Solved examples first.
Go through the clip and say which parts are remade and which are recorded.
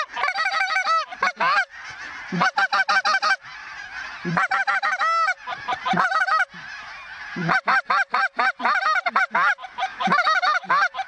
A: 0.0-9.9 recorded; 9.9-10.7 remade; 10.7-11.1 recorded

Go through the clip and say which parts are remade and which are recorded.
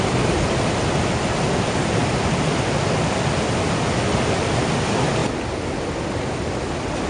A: 0.0-7.1 recorded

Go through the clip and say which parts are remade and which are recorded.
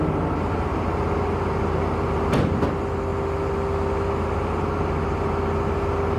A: 0.0-6.2 recorded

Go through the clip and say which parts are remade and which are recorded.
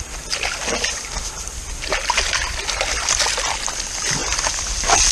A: 0.0-5.1 recorded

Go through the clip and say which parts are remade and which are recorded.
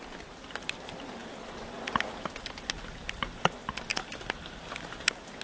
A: 0.0-5.4 recorded